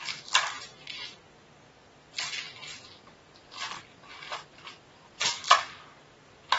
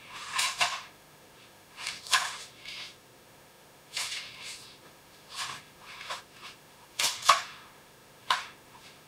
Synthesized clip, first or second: second